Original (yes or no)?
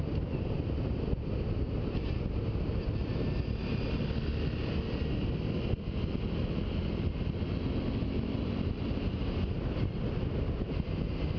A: yes